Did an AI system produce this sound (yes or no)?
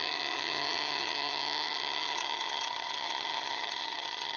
yes